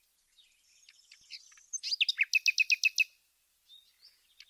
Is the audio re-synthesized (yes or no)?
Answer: no